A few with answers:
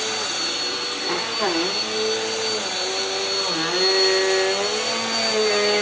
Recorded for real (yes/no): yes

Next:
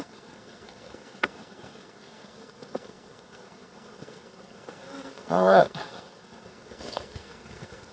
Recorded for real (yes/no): no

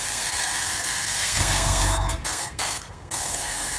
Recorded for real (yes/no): no